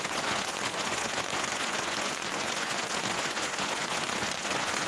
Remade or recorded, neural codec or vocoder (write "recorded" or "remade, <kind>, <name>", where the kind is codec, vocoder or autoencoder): remade, vocoder, Vocos